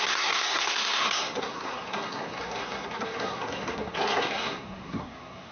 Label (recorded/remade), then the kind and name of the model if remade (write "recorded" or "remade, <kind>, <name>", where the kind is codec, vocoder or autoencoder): remade, codec, SNAC